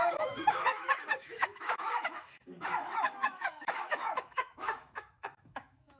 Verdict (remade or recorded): remade